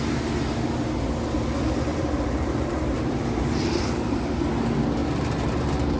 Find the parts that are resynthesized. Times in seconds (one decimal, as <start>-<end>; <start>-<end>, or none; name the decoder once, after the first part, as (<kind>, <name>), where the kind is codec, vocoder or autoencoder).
1.9-4.4 (vocoder, BigVGAN v2); 5.0-6.0